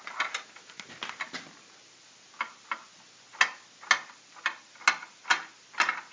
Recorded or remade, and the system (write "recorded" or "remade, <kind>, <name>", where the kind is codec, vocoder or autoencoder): recorded